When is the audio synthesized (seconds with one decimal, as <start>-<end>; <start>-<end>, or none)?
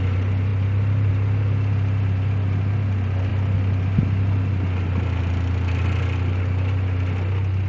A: 0.5-1.1